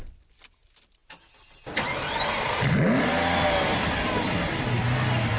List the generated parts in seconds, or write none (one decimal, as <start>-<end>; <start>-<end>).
none